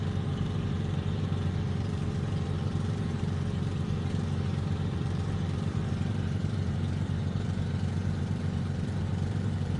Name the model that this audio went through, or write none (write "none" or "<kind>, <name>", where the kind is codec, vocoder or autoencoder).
vocoder, BigVGAN v2